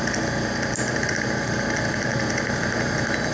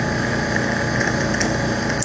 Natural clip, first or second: second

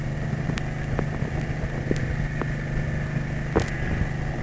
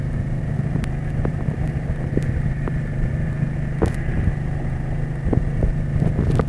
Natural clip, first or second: first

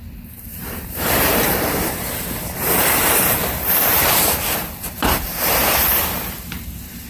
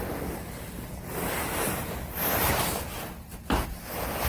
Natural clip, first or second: second